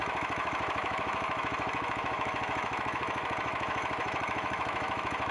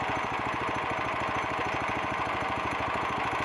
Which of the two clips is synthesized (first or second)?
first